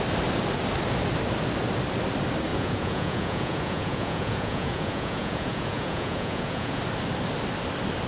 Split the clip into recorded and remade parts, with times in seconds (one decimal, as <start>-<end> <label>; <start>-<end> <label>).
0.0-2.5 recorded; 2.5-6.8 remade; 6.8-8.1 recorded